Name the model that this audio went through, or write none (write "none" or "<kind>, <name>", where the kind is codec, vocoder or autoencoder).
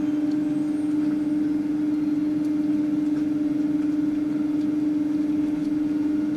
none